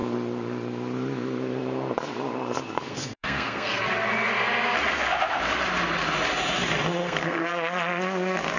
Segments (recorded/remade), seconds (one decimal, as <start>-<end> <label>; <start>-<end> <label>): 0.0-2.9 recorded; 2.9-3.8 remade; 3.8-7.0 recorded; 7.0-7.5 remade; 7.5-8.6 recorded